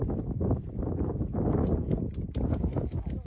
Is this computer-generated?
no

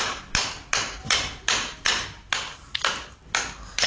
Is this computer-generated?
no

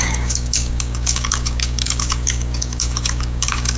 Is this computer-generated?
yes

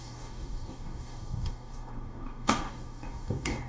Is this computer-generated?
yes